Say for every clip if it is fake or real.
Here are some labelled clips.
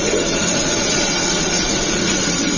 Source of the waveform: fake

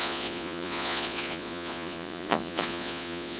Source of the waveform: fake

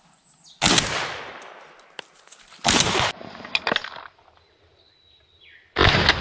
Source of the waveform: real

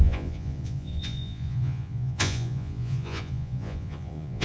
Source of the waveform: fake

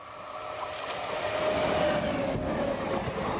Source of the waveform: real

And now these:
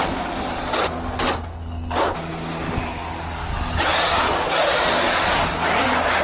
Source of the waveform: real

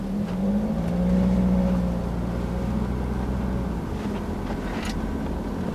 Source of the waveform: real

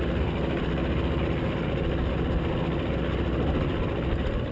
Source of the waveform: real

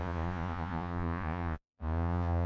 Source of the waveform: fake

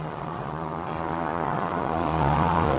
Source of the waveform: fake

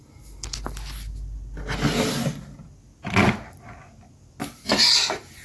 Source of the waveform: real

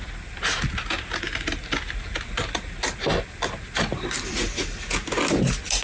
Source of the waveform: real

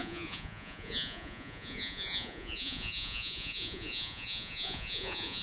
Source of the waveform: fake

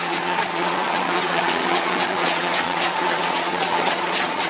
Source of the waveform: fake